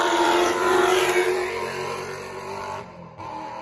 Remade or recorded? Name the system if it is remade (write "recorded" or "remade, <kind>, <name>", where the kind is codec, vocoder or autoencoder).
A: remade, vocoder, BigVGAN v2